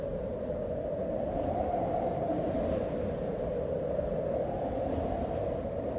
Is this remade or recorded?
recorded